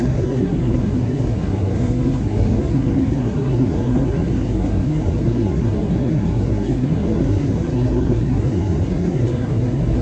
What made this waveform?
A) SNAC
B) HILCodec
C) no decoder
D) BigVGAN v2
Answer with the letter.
A